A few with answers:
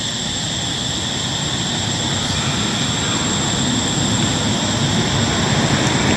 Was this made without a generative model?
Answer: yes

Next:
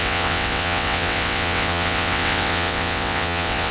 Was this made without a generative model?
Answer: no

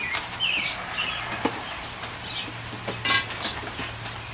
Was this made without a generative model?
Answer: yes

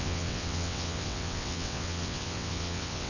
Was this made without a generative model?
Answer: no